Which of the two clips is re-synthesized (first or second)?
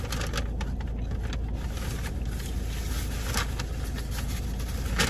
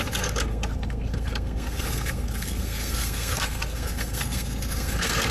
second